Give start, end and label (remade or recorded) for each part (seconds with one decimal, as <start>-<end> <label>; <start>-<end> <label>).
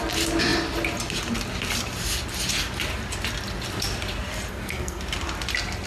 0.0-4.5 recorded; 4.5-5.0 remade; 5.0-5.9 recorded